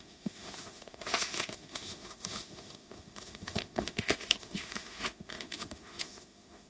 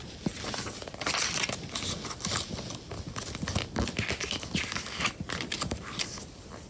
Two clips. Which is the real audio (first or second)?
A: second